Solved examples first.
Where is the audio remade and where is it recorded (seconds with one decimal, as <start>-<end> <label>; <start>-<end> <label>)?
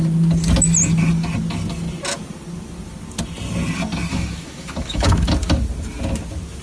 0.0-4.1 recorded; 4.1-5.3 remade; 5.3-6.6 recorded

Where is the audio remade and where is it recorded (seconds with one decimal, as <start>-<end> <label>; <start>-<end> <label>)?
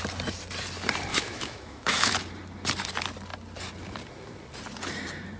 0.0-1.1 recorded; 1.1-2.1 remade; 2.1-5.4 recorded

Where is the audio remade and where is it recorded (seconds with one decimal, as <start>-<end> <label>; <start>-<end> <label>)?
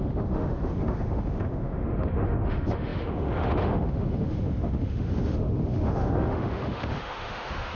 0.0-7.7 remade